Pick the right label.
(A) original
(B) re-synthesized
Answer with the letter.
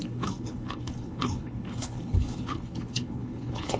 B